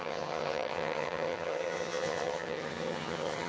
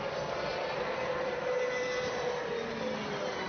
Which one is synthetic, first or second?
first